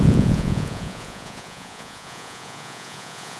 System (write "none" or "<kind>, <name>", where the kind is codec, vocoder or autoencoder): vocoder, Vocos